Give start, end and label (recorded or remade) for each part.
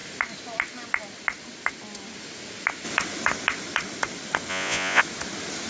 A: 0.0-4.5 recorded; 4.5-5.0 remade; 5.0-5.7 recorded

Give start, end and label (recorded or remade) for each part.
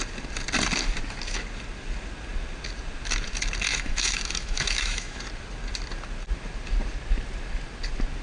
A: 0.0-3.7 recorded; 3.7-5.2 remade; 5.2-8.2 recorded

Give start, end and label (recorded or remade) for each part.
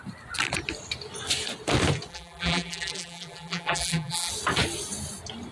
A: 0.0-2.1 recorded; 2.1-4.3 remade; 4.3-5.5 recorded